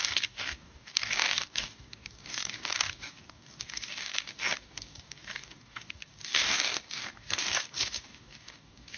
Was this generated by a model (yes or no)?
yes